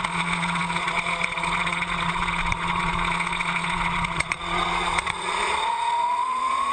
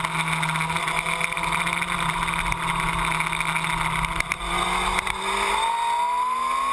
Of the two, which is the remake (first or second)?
first